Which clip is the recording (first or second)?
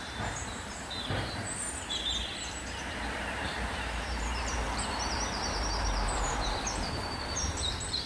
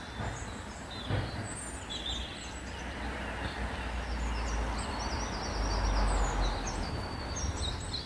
second